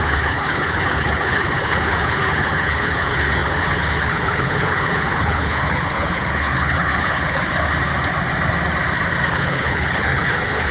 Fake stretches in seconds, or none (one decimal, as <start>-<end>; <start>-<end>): 0.0-7.5; 9.3-10.7